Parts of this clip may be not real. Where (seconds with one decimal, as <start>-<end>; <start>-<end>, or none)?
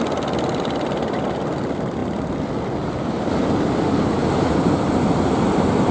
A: none